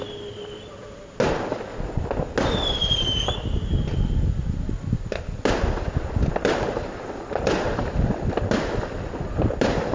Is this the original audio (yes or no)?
yes